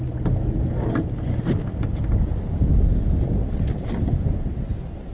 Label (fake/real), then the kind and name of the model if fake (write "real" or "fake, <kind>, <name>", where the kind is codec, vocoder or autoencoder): real